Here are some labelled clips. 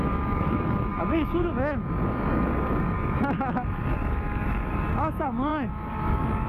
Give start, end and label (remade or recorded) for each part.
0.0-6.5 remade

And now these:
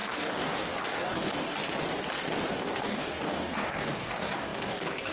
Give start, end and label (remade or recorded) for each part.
0.0-1.6 remade; 1.6-2.6 recorded; 2.6-5.1 remade

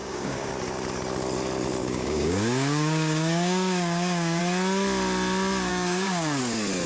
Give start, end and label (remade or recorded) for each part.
0.0-0.5 remade; 0.5-1.8 recorded; 1.8-4.4 remade; 4.4-5.7 recorded; 5.7-6.4 remade; 6.4-6.9 recorded